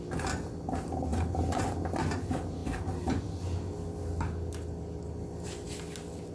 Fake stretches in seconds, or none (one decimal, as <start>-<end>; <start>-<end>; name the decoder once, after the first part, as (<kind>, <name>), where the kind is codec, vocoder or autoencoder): none